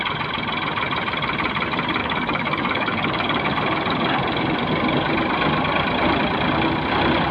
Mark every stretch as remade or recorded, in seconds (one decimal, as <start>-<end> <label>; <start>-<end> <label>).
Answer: 0.0-2.0 recorded; 2.0-3.5 remade; 3.5-7.3 recorded